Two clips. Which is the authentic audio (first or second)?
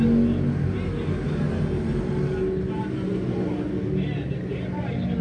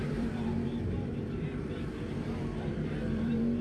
first